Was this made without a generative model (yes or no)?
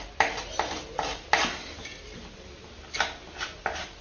yes